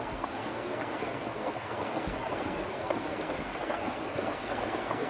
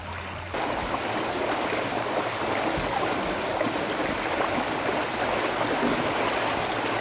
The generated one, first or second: first